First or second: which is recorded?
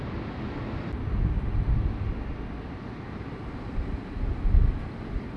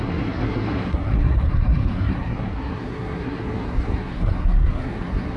first